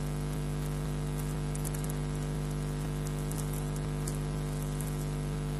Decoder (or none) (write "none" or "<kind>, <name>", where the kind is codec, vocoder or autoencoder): none